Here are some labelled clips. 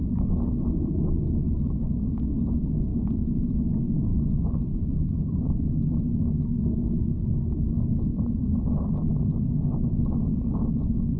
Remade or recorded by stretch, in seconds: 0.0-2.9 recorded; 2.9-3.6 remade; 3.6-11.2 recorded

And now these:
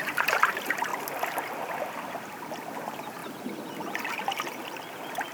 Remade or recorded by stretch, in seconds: 0.0-0.9 remade; 0.9-2.7 recorded; 2.7-3.2 remade; 3.2-4.1 recorded; 4.1-5.3 remade

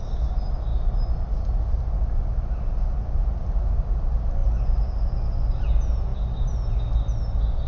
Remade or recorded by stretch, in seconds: 0.0-7.7 recorded

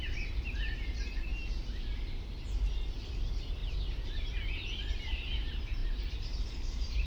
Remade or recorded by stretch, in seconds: 0.0-1.3 remade; 1.3-2.9 recorded; 2.9-3.6 remade; 3.6-4.9 recorded; 4.9-7.1 remade

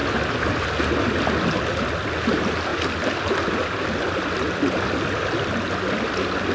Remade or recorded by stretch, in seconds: 0.0-6.5 recorded